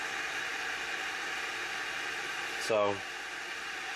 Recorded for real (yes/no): yes